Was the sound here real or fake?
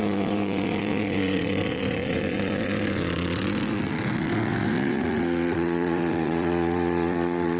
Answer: fake